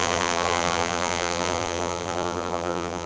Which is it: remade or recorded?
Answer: remade